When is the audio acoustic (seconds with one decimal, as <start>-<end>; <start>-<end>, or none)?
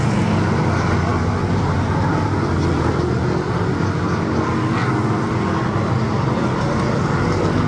0.0-7.7